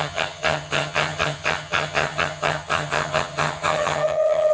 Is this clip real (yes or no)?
no